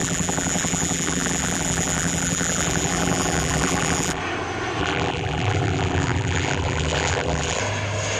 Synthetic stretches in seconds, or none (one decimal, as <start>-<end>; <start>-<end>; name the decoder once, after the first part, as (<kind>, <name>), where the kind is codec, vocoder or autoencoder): 0.0-4.2 (vocoder, BigVGAN v2); 4.8-7.6